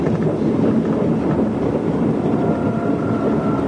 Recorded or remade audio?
recorded